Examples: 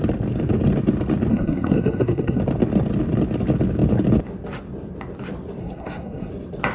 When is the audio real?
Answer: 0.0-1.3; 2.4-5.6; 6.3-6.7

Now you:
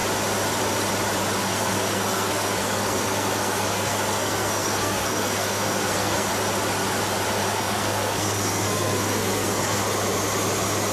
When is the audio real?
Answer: 0.0-1.4; 6.3-7.4; 9.8-10.9

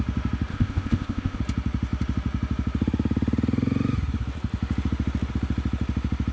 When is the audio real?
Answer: 0.0-0.5; 1.4-6.3